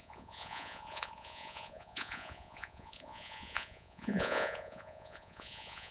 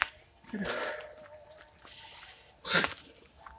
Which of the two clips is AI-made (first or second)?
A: first